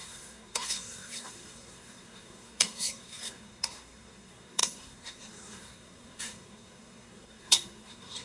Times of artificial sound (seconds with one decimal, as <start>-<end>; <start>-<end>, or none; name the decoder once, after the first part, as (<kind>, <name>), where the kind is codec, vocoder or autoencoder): 0.0-8.2 (codec, SNAC)